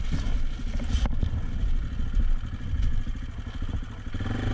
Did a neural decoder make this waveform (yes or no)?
no